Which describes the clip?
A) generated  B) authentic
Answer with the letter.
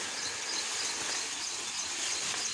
B